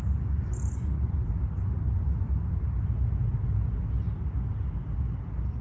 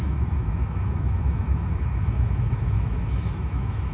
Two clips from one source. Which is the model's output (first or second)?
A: second